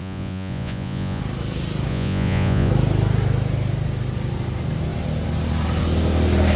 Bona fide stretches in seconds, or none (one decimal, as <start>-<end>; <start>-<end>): 1.2-1.9; 2.7-6.6